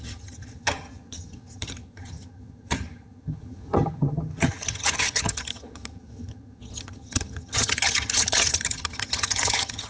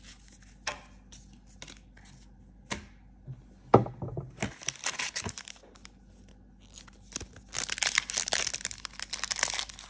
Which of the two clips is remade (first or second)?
first